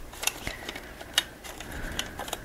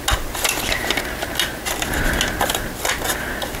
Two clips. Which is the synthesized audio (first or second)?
first